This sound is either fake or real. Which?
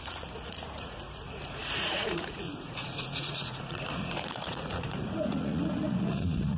fake